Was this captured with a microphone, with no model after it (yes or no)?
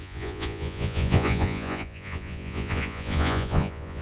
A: no